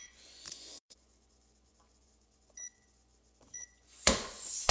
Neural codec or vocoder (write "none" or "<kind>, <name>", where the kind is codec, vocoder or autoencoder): vocoder, Vocos